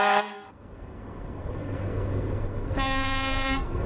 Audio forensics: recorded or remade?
remade